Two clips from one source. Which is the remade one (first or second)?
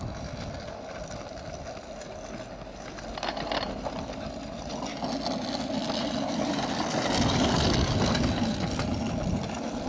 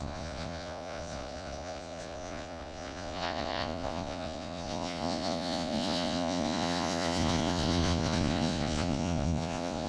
second